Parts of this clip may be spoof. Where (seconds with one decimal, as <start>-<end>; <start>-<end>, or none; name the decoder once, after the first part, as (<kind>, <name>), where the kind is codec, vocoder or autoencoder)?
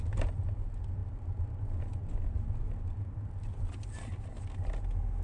none